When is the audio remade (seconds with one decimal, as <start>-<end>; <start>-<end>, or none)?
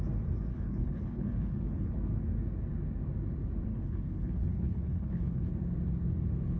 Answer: 0.5-1.9; 3.7-5.5